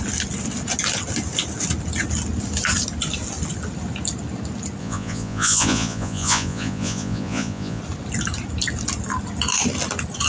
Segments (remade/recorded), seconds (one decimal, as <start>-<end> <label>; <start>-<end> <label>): 0.0-4.8 recorded; 4.8-7.8 remade; 7.8-10.3 recorded